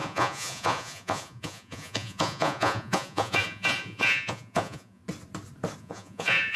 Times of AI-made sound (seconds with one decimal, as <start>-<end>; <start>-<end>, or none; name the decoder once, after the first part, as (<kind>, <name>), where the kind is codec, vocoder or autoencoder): 0.0-5.0 (vocoder, Vocos); 5.8-6.6